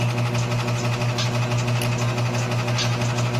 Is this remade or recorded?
recorded